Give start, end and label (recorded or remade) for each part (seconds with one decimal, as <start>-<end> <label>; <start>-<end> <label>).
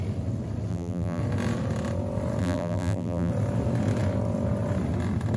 0.0-0.7 recorded; 0.7-1.2 remade; 1.2-2.4 recorded; 2.4-3.3 remade; 3.3-5.4 recorded